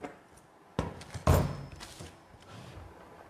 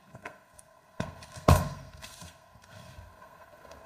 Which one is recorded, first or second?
first